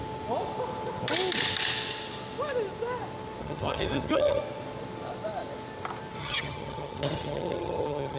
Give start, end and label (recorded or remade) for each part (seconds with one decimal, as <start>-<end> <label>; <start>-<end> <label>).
0.0-3.4 recorded; 3.4-4.4 remade; 4.4-6.2 recorded; 6.2-8.2 remade